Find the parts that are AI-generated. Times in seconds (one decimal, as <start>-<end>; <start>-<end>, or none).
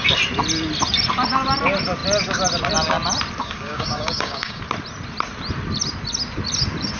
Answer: 3.4-4.6